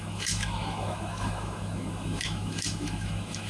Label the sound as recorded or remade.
remade